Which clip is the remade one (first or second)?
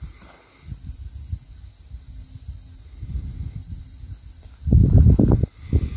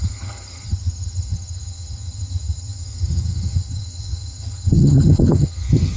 second